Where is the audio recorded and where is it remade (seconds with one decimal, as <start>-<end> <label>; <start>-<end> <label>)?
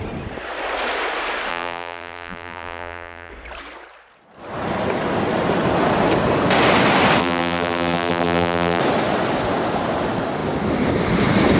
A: 0.0-1.5 recorded; 1.5-3.3 remade; 3.3-7.2 recorded; 7.2-8.8 remade; 8.8-11.6 recorded